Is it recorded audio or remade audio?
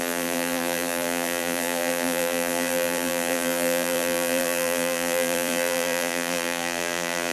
remade